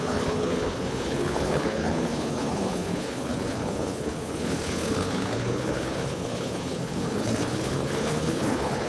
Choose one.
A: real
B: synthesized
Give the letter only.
B